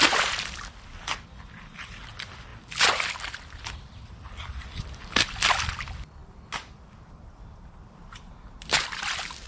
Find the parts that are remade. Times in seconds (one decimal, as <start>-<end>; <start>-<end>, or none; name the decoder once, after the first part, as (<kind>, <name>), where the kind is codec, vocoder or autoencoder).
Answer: none